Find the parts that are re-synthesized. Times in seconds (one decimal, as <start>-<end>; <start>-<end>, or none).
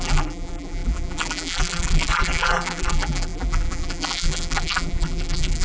0.0-5.6